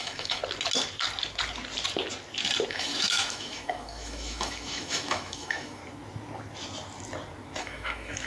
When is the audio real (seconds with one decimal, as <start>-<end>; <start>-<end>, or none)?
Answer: 0.4-2.7; 5.8-7.6